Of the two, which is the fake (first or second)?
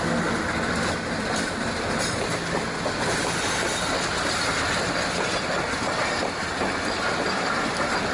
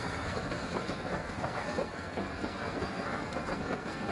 second